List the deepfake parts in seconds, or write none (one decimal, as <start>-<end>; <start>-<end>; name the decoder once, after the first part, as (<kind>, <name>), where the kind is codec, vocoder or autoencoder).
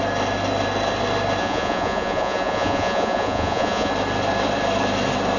1.4-3.9 (vocoder, Vocos)